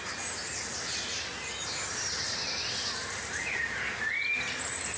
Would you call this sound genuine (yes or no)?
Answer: yes